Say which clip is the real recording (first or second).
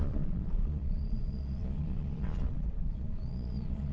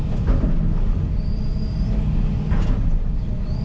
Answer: second